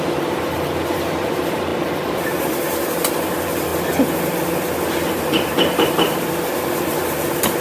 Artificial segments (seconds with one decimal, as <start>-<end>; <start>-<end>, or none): 0.0-3.7; 5.2-7.6